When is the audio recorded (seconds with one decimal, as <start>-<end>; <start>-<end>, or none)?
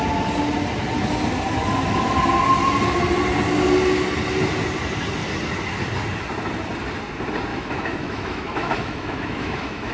0.0-7.5